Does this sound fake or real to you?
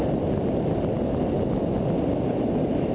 real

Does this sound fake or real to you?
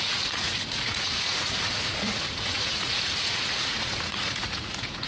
fake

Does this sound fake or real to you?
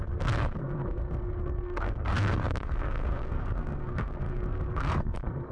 fake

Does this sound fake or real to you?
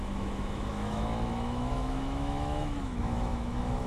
fake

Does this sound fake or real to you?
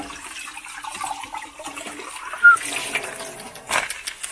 real